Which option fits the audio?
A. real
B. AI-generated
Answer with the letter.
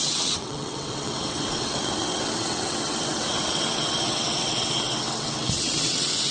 B